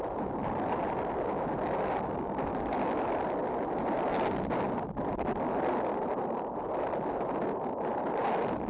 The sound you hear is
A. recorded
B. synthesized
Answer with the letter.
A